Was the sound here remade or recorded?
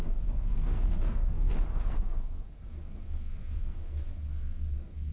remade